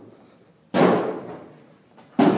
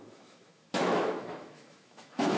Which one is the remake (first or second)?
second